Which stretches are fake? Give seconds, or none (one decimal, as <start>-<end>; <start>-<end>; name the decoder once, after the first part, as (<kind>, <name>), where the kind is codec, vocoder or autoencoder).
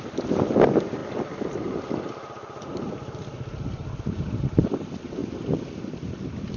none